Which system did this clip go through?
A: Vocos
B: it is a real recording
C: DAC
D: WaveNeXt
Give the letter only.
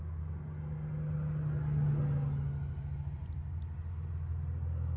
B